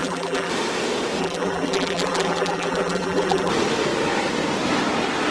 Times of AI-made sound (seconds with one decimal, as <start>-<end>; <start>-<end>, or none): 0.0-0.5; 1.2-3.5